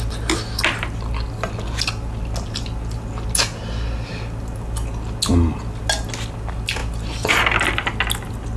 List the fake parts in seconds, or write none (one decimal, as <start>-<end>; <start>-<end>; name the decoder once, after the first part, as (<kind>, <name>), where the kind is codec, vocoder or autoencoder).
none